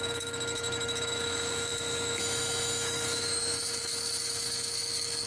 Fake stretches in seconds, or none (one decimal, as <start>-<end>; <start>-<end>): 0.0-5.3